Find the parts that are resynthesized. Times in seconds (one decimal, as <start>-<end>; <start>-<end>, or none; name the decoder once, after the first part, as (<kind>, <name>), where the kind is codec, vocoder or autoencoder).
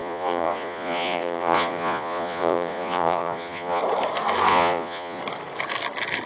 0.0-3.8 (vocoder, Vocos); 4.5-5.2